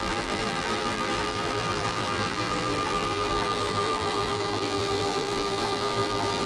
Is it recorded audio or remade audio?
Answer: remade